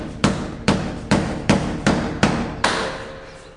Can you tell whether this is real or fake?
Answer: fake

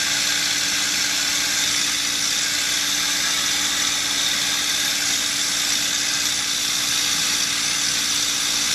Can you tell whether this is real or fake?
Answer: real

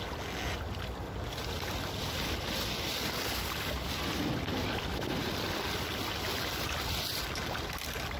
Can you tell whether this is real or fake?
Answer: real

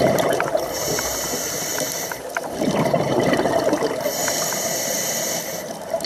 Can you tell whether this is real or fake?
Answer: fake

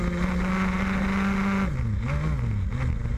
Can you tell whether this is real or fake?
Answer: real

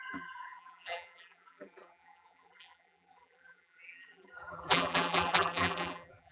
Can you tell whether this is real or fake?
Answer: fake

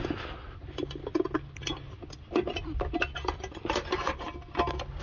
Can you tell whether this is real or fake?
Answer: real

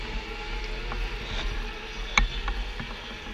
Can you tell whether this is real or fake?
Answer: real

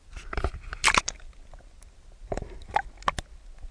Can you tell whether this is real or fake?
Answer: real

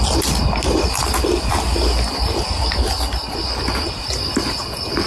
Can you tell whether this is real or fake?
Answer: real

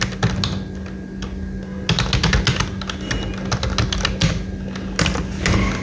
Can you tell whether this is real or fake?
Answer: real